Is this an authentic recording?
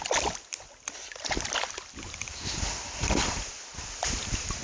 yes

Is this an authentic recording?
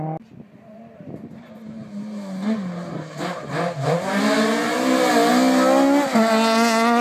yes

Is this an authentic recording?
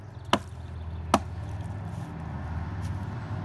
yes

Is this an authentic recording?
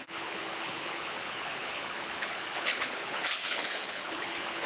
no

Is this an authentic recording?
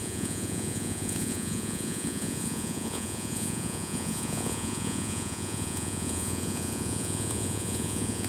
no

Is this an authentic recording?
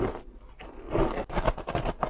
yes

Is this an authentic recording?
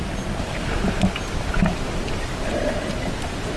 yes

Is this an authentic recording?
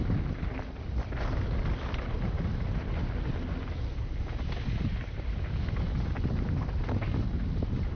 yes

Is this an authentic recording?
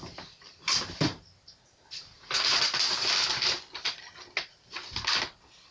yes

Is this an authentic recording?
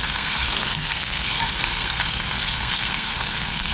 no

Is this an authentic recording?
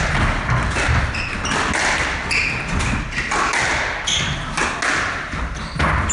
yes